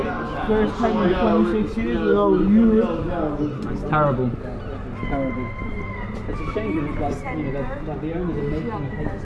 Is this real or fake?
real